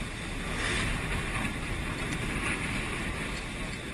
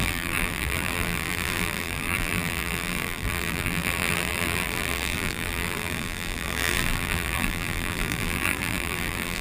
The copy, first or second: second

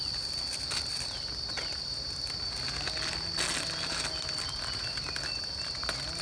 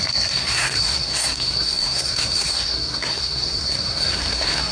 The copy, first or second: second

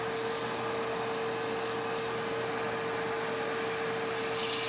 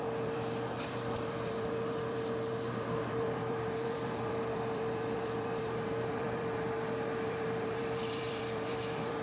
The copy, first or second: second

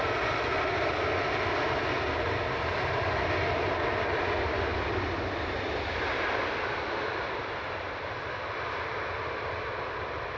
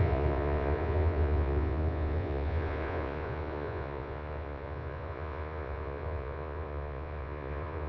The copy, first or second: second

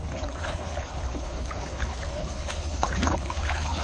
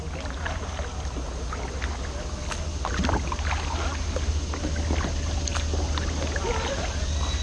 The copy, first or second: first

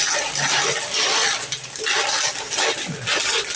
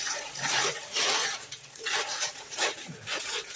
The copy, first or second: second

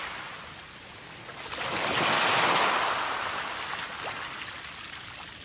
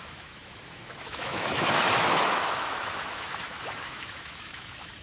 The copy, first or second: second